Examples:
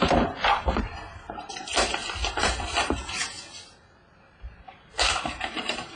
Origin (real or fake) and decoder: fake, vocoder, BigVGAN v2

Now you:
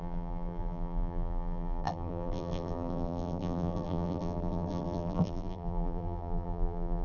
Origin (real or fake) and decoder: fake, vocoder, BigVGAN v2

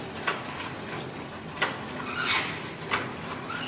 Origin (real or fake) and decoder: real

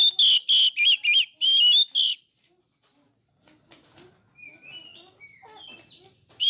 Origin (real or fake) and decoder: real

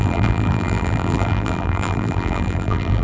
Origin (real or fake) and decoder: fake, vocoder, BigVGAN v2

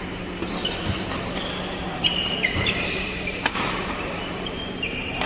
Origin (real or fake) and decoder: fake, vocoder, BigVGAN v2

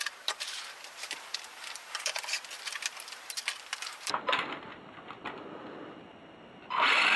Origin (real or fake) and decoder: fake, vocoder, BigVGAN v2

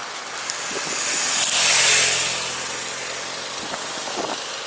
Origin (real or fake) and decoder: real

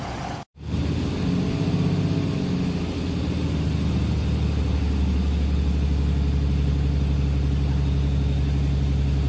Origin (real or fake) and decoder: real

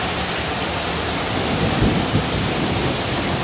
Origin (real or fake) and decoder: fake, vocoder, BigVGAN v2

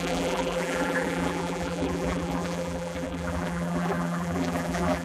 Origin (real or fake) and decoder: fake, vocoder, BigVGAN v2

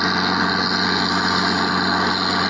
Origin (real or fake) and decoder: real